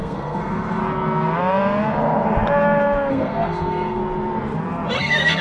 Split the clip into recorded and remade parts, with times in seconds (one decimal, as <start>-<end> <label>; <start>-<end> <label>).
0.0-0.8 remade; 0.8-3.1 recorded; 3.1-4.0 remade; 4.0-5.0 recorded; 5.0-5.4 remade

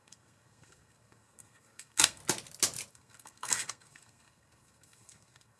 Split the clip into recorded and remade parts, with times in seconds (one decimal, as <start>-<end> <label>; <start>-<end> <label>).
0.0-2.2 remade; 2.2-2.9 recorded; 2.9-5.6 remade

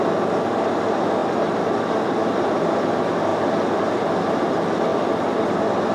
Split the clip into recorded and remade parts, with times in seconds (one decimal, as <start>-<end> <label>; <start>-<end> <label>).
0.0-5.9 recorded

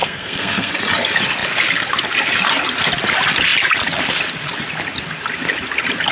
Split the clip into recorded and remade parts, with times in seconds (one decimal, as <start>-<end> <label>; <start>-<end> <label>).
0.0-0.7 remade; 0.7-6.1 recorded

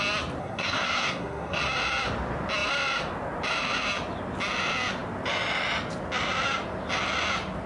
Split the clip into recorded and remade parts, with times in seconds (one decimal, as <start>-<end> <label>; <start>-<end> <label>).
0.0-0.4 recorded; 0.4-1.6 remade; 1.6-7.7 recorded

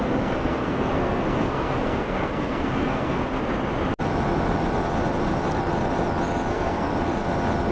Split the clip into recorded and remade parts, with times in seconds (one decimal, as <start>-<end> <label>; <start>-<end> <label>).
0.0-3.2 remade; 3.2-6.5 recorded; 6.5-6.9 remade; 6.9-7.7 recorded

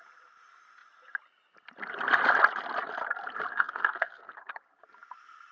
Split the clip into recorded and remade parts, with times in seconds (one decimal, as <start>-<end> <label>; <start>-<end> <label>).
0.0-3.5 recorded; 3.5-4.5 remade; 4.5-5.5 recorded

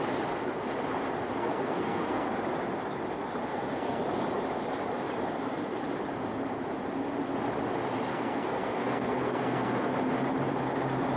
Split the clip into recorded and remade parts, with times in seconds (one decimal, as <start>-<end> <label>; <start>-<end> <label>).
0.0-1.3 recorded; 1.3-2.3 remade; 2.3-3.5 recorded; 3.5-4.0 remade; 4.0-8.1 recorded; 8.1-9.9 remade; 9.9-11.2 recorded